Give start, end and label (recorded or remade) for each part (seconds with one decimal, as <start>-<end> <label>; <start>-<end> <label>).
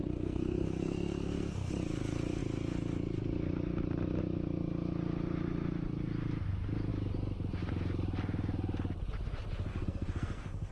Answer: 0.0-1.7 remade; 1.7-9.7 recorded; 9.7-10.7 remade